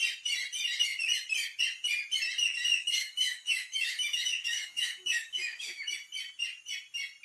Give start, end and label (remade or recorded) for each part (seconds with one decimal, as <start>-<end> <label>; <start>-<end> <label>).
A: 0.0-2.7 recorded; 2.7-5.9 remade; 5.9-7.2 recorded